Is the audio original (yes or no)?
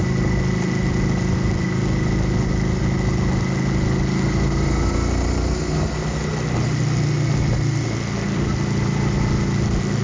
yes